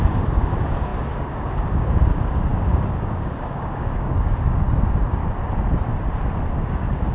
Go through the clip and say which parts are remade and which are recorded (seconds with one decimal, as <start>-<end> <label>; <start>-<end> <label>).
0.0-5.2 remade; 5.2-6.5 recorded; 6.5-7.1 remade